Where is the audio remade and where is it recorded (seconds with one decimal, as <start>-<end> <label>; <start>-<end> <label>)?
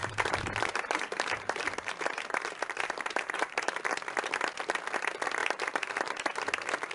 0.0-3.8 remade; 3.8-5.4 recorded; 5.4-6.4 remade; 6.4-6.9 recorded